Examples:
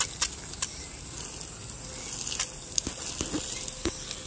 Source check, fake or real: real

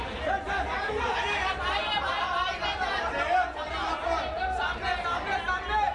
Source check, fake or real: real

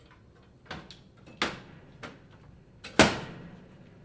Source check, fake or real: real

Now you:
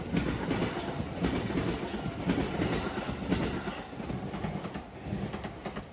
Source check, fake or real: real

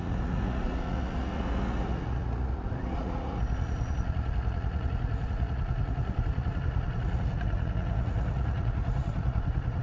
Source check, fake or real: fake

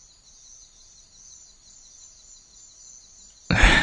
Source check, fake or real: real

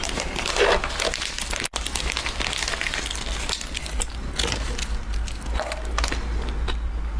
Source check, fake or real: real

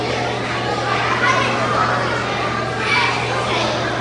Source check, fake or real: real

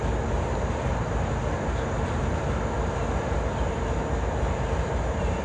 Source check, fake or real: real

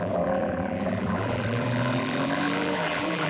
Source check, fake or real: fake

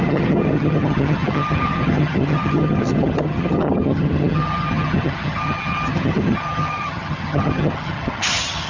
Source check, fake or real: fake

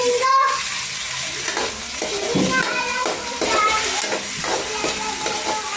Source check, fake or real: real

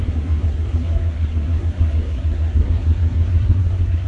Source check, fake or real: fake